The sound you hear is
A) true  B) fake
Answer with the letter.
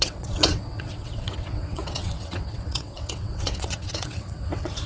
B